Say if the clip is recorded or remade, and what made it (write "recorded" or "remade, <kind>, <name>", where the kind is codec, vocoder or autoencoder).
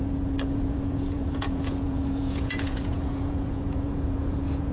remade, vocoder, Vocos